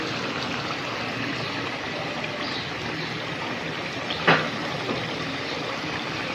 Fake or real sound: real